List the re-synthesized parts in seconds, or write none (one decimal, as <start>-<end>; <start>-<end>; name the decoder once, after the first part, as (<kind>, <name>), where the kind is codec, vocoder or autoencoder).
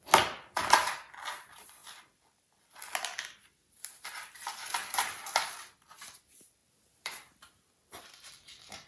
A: 6.6-8.9 (vocoder, BigVGAN v2)